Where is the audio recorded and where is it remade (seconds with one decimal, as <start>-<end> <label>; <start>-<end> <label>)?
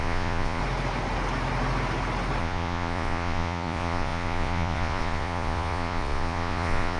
0.0-0.6 remade; 0.6-2.4 recorded; 2.4-7.0 remade